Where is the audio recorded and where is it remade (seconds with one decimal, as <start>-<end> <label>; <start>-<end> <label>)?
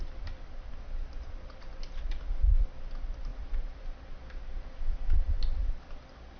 0.0-6.4 recorded